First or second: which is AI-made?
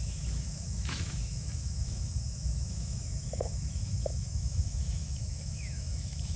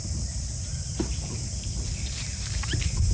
first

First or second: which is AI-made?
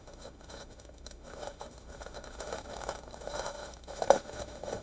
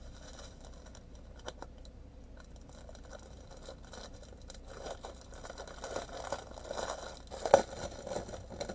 first